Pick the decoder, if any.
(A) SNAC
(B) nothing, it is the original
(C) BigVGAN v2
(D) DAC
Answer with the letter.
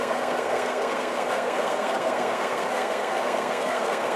A